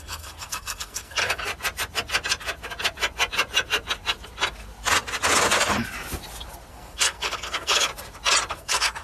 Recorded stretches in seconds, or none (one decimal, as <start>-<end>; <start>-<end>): 1.5-6.7; 7.9-8.5

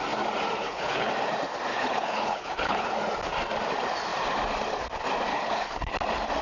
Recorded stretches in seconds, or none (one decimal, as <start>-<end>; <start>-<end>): 0.0-0.6; 1.1-1.7; 2.9-5.3; 5.9-6.4

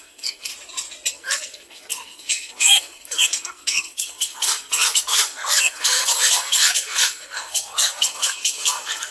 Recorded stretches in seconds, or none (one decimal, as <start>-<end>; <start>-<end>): 0.5-1.1

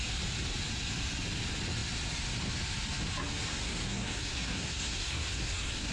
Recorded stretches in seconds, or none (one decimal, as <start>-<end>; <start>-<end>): 0.0-3.5

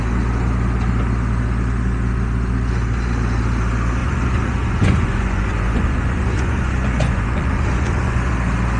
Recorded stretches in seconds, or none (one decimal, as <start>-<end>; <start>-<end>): 0.0-4.0; 8.3-8.8

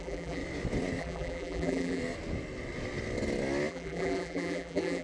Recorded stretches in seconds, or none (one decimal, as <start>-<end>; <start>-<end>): 0.4-1.0; 2.0-3.7

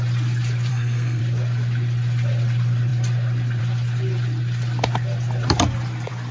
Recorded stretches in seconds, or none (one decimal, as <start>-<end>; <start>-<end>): 0.0-0.7; 1.2-6.3

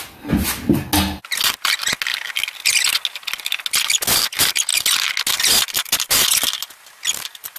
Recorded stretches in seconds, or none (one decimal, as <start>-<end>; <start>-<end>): 0.0-7.6